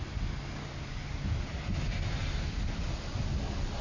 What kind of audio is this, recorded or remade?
recorded